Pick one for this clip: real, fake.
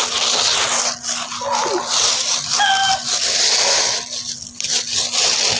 real